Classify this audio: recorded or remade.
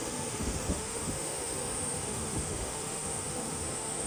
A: remade